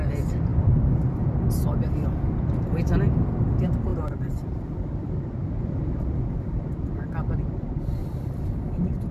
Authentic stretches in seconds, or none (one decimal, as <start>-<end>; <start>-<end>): 0.0-3.9; 4.8-8.0